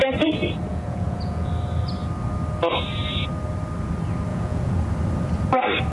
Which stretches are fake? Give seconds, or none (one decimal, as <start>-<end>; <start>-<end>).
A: 0.7-1.5; 4.3-4.8